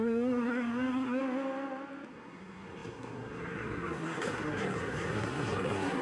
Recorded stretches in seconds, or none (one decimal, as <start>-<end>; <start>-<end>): 1.2-2.1